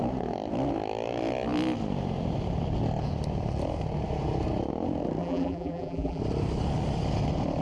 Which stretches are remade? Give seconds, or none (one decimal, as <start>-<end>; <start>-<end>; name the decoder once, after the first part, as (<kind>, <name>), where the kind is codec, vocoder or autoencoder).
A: 5.2-6.2 (vocoder, BigVGAN v2)